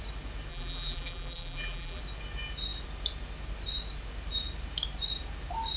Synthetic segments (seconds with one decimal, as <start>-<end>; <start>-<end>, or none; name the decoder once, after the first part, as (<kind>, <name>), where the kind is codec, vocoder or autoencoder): 0.5-2.0 (vocoder, BigVGAN v2)